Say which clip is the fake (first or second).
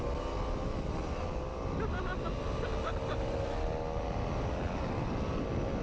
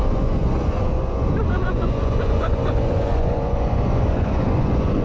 second